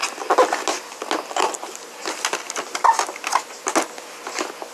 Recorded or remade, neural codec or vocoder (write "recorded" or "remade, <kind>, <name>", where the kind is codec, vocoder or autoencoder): recorded